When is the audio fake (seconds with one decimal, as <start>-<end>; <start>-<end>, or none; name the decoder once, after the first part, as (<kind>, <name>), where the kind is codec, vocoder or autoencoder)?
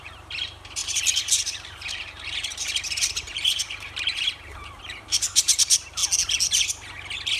0.0-6.0 (vocoder, BigVGAN v2)